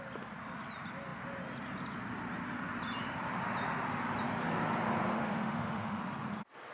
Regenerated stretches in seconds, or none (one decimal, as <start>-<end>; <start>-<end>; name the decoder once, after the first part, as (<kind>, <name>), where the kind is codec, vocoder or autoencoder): 5.1-6.0 (autoencoder, DAC-VAE)